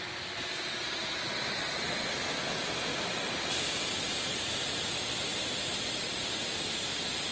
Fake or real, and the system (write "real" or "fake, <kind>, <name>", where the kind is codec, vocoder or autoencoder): real